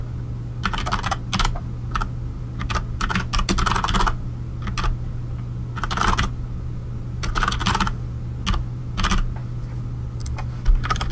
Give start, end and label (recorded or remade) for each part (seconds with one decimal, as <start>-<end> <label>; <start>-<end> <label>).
0.0-11.1 recorded